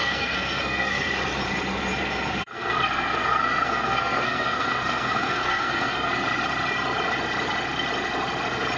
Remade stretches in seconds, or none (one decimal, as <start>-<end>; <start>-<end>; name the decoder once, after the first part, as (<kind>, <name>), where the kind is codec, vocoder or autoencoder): 0.0-1.1 (codec, SNAC); 2.4-6.1